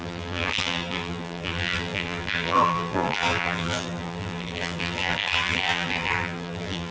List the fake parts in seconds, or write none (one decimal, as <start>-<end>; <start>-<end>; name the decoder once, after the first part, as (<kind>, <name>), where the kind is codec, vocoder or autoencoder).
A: 0.0-6.9 (vocoder, BigVGAN v2)